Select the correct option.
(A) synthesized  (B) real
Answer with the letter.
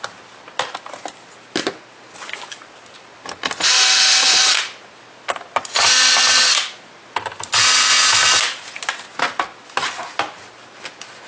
B